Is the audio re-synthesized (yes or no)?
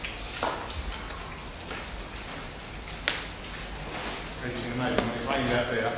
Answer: no